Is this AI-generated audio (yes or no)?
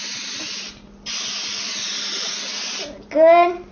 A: no